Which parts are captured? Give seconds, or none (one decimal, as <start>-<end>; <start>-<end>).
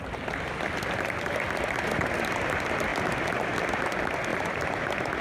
0.0-4.3; 4.8-5.2